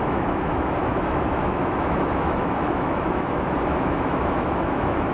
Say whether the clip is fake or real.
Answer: fake